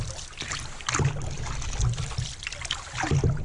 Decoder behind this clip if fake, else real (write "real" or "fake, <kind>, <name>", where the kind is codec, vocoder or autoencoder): real